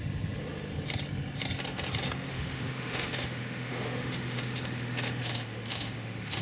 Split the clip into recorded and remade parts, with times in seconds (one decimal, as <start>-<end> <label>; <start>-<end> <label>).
0.0-2.3 recorded; 2.3-6.4 remade